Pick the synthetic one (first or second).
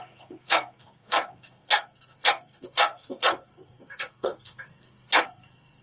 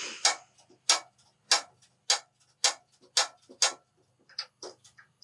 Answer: first